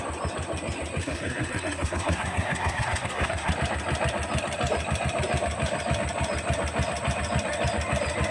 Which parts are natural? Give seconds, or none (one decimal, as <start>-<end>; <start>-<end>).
0.0-1.0; 3.5-8.3